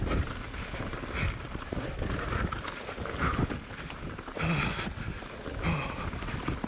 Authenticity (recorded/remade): recorded